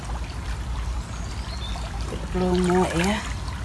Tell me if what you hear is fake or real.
real